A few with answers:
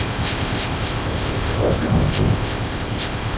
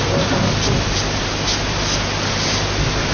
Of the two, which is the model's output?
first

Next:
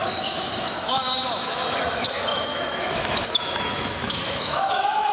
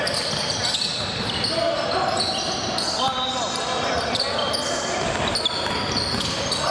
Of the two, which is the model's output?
first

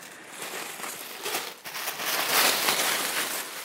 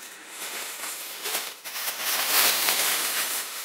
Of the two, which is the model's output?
second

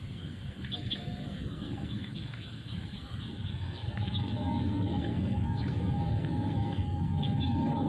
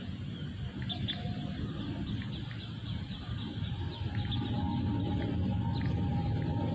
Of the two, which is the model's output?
first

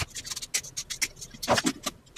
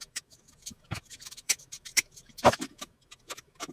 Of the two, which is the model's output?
second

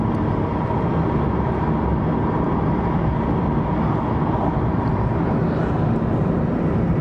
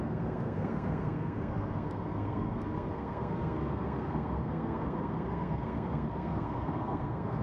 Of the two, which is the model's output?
second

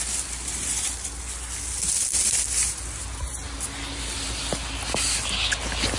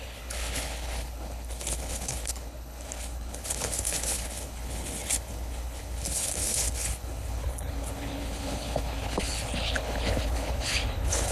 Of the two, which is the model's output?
second